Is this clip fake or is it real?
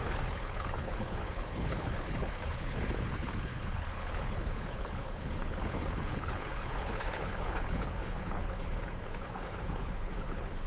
fake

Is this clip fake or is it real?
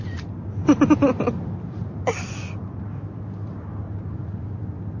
real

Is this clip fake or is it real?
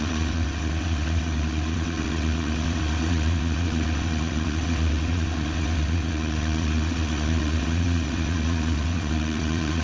fake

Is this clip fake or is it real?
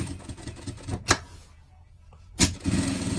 fake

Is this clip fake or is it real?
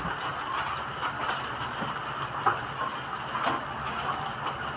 real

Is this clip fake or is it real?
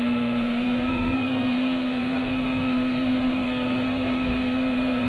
fake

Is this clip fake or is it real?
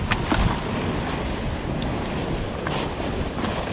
real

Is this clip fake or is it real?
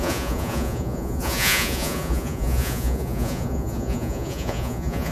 fake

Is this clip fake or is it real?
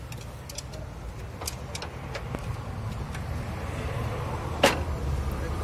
real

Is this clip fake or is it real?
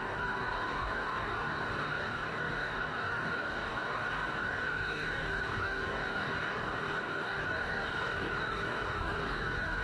fake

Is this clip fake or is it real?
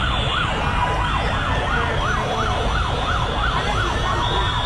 real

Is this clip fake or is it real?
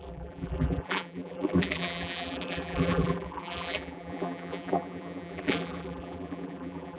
fake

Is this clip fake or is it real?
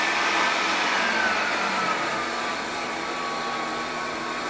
fake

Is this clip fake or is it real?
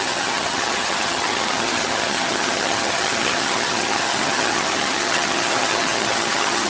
fake